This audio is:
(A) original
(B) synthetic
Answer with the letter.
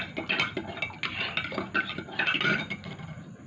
A